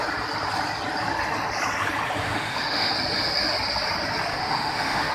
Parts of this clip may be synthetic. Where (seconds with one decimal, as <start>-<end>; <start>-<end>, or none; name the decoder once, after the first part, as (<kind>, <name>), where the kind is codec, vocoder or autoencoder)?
2.2-2.9 (autoencoder, DAC-VAE); 4.3-5.1